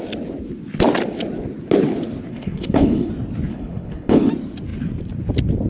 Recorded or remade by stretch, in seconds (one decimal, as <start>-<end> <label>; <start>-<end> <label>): 0.0-2.3 recorded; 2.3-3.1 remade; 3.1-3.5 recorded; 3.5-4.3 remade; 4.3-5.7 recorded